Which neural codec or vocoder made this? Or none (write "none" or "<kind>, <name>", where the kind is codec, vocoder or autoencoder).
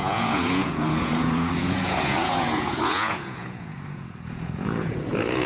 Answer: vocoder, Vocos